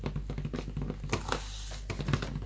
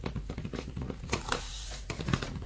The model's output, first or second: second